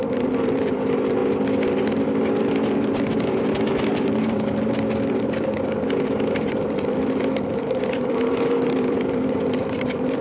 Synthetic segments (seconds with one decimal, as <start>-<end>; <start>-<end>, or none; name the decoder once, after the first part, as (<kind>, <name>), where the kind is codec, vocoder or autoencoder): 0.0-1.2 (vocoder, BigVGAN v2); 6.3-10.2